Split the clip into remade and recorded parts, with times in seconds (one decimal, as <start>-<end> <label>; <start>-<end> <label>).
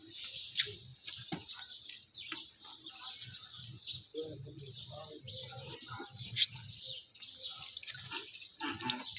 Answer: 0.0-9.2 recorded